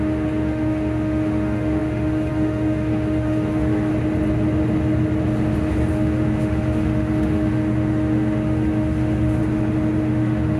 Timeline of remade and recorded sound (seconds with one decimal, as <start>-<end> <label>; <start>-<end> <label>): 0.0-3.9 remade; 3.9-5.9 recorded; 5.9-9.4 remade; 9.4-10.1 recorded; 10.1-10.6 remade

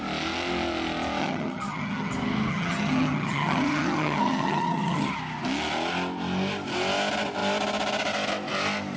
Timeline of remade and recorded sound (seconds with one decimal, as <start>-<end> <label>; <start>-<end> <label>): 0.0-1.2 recorded; 1.2-2.1 remade; 2.1-2.5 recorded; 2.5-5.1 remade; 5.1-9.0 recorded